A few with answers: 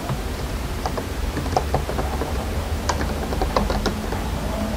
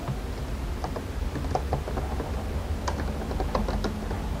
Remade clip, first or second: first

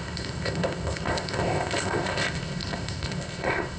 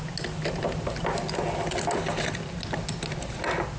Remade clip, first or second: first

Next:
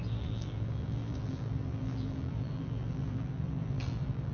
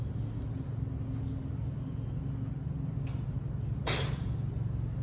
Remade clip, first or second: first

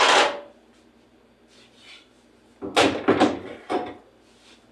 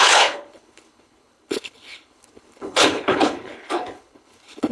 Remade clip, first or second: second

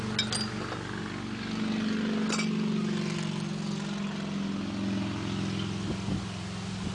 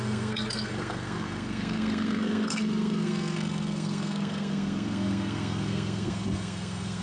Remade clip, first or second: second